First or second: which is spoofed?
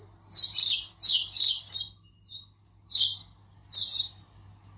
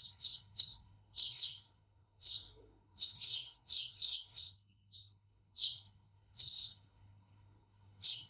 second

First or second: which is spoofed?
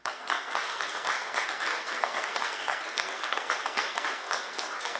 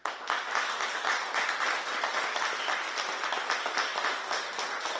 first